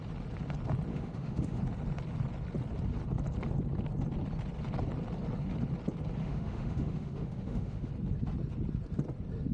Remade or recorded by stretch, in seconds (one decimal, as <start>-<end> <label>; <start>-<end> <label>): 0.0-0.9 recorded; 0.9-1.6 remade; 1.6-6.2 recorded; 6.2-7.9 remade; 7.9-9.5 recorded